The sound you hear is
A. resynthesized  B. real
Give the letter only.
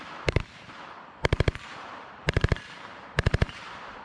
A